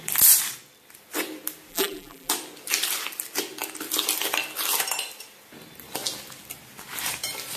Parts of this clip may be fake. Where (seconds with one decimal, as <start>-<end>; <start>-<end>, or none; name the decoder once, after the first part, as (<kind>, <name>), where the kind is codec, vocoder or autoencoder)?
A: 1.7-2.3 (vocoder, BigVGAN v2)